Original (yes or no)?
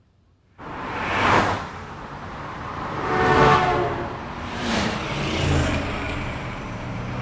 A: no